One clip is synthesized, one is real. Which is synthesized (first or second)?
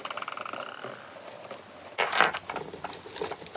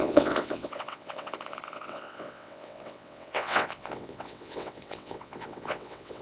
second